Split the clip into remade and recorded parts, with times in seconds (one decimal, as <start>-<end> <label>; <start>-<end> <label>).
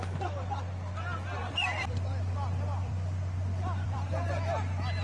0.0-1.4 recorded; 1.4-4.4 remade; 4.4-5.0 recorded